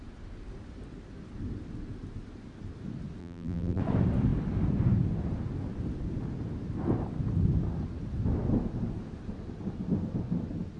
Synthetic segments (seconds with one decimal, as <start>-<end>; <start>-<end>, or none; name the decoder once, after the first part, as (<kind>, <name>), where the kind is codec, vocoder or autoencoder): 3.2-3.8 (vocoder, BigVGAN v2)

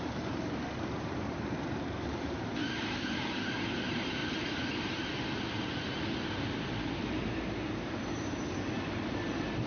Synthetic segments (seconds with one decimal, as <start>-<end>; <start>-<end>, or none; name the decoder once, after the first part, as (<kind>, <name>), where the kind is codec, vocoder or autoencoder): 0.0-4.2 (vocoder, BigVGAN v2); 6.9-9.7

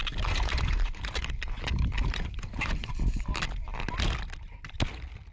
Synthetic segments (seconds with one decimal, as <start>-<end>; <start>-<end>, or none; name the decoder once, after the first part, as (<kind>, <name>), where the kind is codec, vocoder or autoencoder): 0.0-3.2 (vocoder, BigVGAN v2)

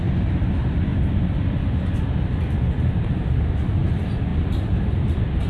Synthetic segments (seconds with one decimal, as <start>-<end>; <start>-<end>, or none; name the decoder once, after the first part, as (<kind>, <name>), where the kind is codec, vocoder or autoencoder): 0.9-3.4 (vocoder, BigVGAN v2); 4.3-5.5

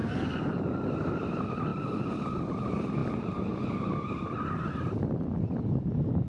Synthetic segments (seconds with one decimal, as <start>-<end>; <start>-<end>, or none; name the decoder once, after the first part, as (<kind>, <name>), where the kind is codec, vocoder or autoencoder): 1.0-1.7 (vocoder, BigVGAN v2); 2.3-3.0

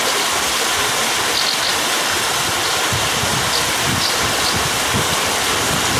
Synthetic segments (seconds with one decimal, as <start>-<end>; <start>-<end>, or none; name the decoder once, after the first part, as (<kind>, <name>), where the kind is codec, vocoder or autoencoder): none

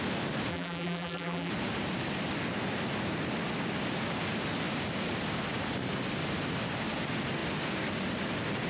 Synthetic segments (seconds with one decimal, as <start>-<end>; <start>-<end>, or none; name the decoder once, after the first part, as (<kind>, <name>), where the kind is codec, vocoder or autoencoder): 0.5-1.5 (vocoder, BigVGAN v2)